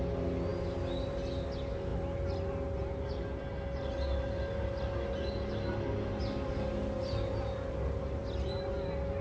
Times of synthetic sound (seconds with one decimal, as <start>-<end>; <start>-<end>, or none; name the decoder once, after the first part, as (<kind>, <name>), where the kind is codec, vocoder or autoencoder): none